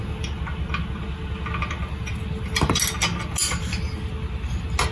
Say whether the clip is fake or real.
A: real